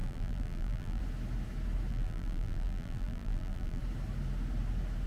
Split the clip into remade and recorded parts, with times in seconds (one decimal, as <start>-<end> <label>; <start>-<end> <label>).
0.0-1.0 remade; 1.0-1.9 recorded; 1.9-3.8 remade; 3.8-5.1 recorded